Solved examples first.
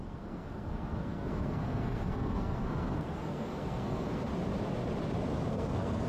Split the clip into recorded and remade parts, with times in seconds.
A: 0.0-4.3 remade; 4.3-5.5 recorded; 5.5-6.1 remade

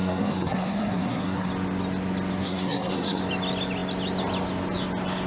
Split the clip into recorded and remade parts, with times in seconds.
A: 0.0-1.5 remade; 1.5-2.4 recorded; 2.4-3.2 remade; 3.2-5.3 recorded

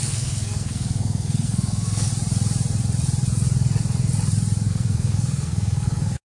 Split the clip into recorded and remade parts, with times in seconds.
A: 0.0-2.1 remade; 2.1-4.7 recorded; 4.7-6.2 remade